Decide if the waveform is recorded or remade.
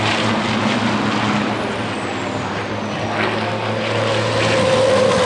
recorded